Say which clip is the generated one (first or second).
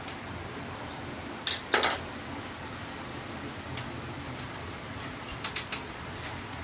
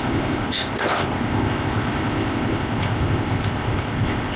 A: second